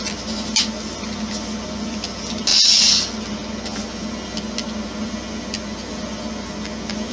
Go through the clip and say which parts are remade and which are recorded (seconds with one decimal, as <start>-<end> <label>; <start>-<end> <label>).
0.0-2.5 remade; 2.5-7.1 recorded